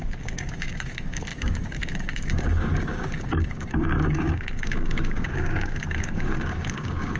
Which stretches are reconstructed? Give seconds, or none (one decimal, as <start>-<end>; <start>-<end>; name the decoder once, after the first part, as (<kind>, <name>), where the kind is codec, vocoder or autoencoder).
0.0-7.2 (codec, DAC)